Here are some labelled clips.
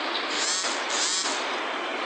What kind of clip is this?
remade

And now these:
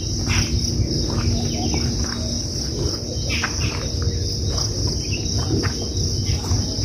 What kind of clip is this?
recorded